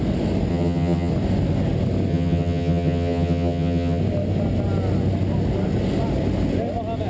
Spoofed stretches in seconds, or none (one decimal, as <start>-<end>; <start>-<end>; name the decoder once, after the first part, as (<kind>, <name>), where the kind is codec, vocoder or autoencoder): 0.5-1.1 (vocoder, HiFi-GAN); 2.1-4.0